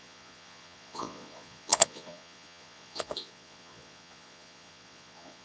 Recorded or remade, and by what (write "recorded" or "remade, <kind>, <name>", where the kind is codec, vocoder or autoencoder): remade, vocoder, Vocos